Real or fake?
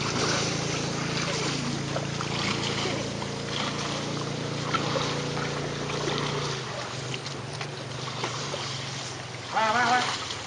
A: real